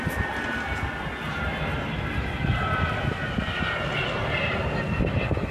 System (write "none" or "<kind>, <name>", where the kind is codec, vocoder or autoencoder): none